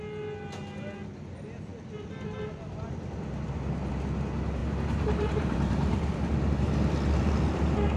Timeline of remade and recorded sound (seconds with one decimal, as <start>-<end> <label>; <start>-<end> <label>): 0.0-4.6 recorded; 4.6-6.3 remade; 6.3-8.0 recorded